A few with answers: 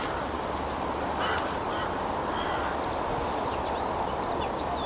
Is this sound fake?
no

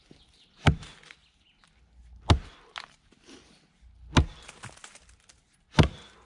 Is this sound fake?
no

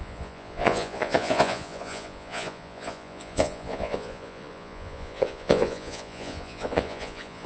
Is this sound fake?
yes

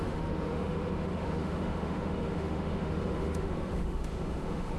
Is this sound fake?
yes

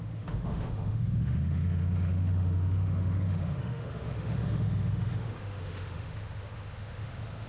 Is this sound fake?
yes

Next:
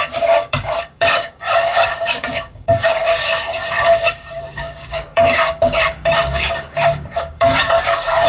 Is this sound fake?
yes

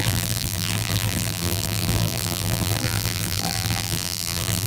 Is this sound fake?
yes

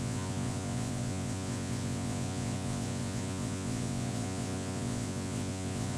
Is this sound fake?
yes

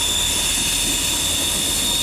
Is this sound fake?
no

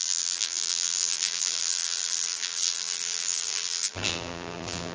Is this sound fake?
yes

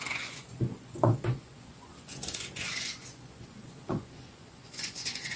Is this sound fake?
yes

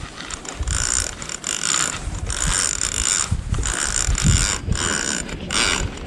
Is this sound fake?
no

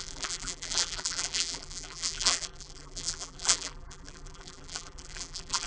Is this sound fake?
yes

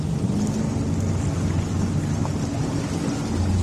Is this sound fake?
no